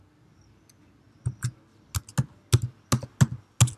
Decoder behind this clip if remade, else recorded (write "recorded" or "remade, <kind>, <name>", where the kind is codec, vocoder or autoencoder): recorded